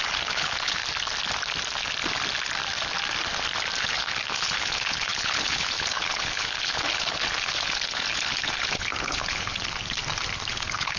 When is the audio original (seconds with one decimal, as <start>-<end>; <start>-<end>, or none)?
0.8-3.8; 10.0-10.5